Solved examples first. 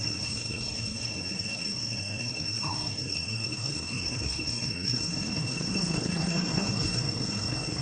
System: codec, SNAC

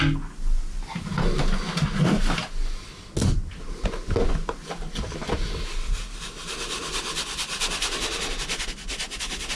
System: none